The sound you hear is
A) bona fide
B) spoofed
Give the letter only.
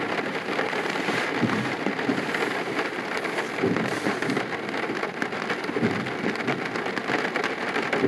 A